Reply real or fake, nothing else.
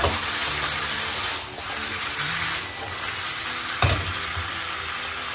real